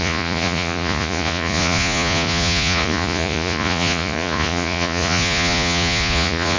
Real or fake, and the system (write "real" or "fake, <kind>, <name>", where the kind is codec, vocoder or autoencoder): fake, vocoder, Vocos